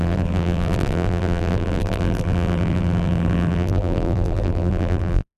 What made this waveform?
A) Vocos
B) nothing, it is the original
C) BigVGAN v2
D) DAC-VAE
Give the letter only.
C